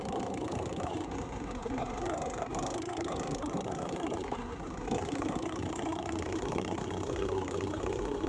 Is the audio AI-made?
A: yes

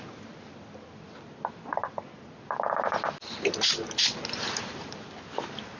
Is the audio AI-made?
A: no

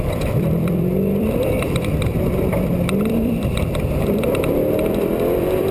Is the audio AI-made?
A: yes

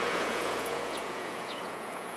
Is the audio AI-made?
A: yes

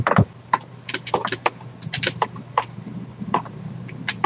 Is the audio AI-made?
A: yes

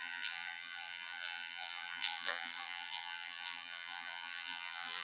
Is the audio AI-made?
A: yes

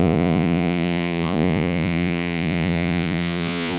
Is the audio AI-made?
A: yes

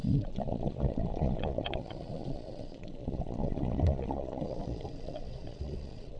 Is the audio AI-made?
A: yes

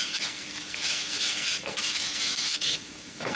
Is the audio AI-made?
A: yes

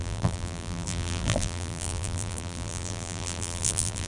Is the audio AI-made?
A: yes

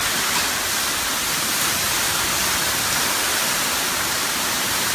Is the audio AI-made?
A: no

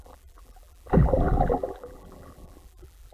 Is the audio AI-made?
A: yes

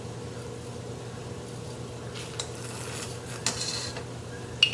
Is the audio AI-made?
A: no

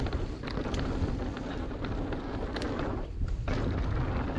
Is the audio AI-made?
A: no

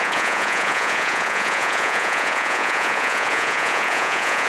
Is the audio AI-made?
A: yes